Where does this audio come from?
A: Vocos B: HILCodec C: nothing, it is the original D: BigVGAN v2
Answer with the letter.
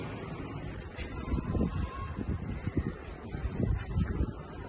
C